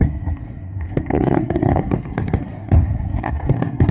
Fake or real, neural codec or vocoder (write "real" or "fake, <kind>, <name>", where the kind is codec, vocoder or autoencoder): fake, codec, SNAC